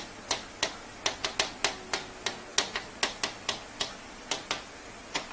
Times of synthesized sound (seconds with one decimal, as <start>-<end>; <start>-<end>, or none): none